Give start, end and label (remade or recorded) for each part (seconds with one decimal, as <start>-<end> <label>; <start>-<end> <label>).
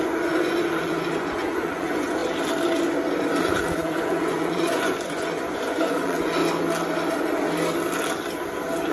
0.0-2.2 remade; 2.2-3.4 recorded; 3.4-6.4 remade; 6.4-8.9 recorded